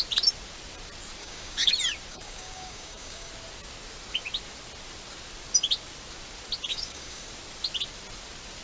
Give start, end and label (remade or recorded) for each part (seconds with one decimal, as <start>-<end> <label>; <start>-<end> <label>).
0.0-1.2 recorded; 1.2-1.7 remade; 1.7-2.1 recorded; 2.1-3.3 remade; 3.3-6.7 recorded; 6.7-7.3 remade; 7.3-8.6 recorded

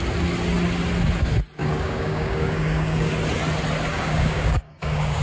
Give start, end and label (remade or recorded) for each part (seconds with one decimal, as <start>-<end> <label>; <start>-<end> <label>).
0.0-1.6 recorded; 1.6-3.1 remade; 3.1-3.9 recorded; 3.9-5.2 remade